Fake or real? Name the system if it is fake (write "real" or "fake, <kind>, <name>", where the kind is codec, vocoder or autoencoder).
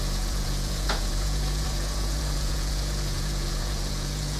fake, vocoder, Vocos